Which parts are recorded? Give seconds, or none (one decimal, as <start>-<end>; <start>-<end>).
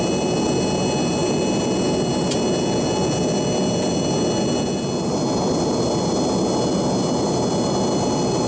0.0-8.5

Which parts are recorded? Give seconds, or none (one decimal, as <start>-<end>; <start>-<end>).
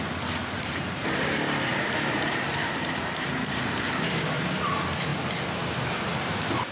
0.0-0.4; 1.1-1.7; 4.0-6.7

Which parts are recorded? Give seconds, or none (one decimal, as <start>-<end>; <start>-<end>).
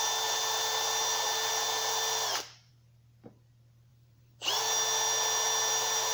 0.0-3.9; 4.6-6.1